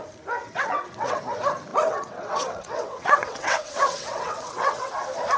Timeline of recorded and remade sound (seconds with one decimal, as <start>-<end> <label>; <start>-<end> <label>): 0.0-0.4 recorded; 0.4-1.2 remade; 1.2-1.7 recorded; 1.7-4.9 remade; 4.9-5.4 recorded